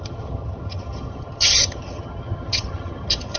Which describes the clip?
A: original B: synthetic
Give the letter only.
B